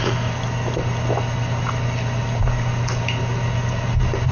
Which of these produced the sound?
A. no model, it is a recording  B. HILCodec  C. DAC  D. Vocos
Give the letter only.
A